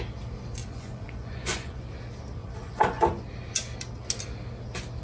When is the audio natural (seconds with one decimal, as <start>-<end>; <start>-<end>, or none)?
0.0-0.6; 1.8-2.4; 3.0-5.0